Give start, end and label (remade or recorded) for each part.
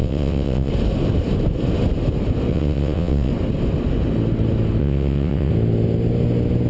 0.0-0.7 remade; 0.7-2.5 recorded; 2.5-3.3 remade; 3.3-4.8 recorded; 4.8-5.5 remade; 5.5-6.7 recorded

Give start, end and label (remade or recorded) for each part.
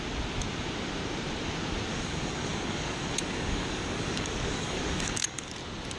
0.0-1.9 recorded; 1.9-5.5 remade; 5.5-6.0 recorded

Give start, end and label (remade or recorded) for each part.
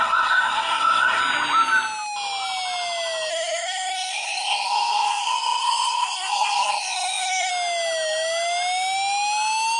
0.0-1.2 remade; 1.2-3.3 recorded; 3.3-7.5 remade; 7.5-9.8 recorded